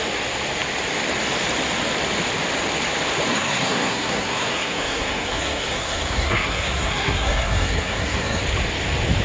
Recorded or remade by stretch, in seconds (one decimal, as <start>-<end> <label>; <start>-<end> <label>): 0.0-3.3 recorded; 3.3-8.4 remade; 8.4-9.2 recorded